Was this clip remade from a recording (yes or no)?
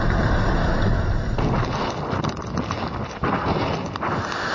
no